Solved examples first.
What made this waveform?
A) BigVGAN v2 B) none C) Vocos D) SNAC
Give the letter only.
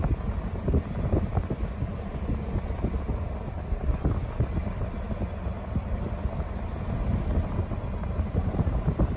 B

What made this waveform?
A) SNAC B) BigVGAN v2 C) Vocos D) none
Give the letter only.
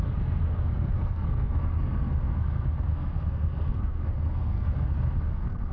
A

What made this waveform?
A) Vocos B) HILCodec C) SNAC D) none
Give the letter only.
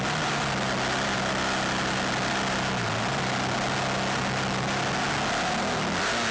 D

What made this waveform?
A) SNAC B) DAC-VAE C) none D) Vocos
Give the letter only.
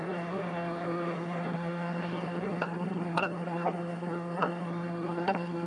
A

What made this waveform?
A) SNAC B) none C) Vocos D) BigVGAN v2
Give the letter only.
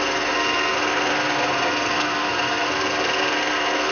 A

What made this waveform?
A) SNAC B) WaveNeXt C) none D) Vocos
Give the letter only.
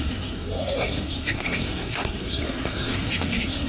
A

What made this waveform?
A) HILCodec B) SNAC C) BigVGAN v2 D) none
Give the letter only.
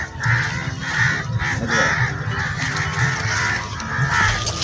D